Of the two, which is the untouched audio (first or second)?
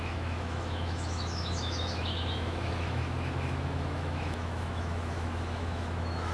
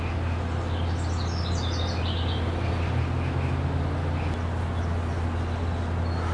second